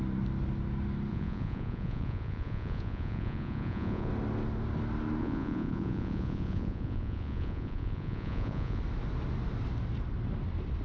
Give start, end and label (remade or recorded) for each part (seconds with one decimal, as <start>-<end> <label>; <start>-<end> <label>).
0.0-1.1 recorded; 1.1-4.1 remade; 4.1-5.2 recorded; 5.2-8.8 remade; 8.8-10.8 recorded